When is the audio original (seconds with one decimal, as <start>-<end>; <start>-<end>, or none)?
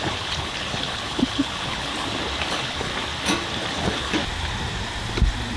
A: 1.9-2.5; 2.9-3.8; 4.2-5.6